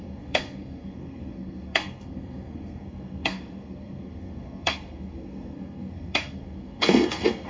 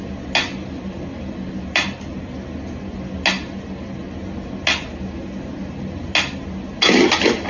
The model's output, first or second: first